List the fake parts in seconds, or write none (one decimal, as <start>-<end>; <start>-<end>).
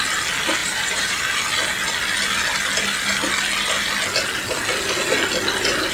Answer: 0.6-1.2